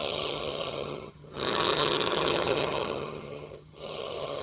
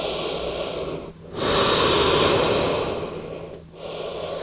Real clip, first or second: second